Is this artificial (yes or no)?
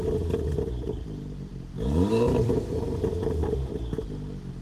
yes